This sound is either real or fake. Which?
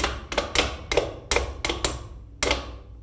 real